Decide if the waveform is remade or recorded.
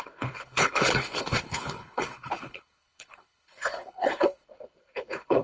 remade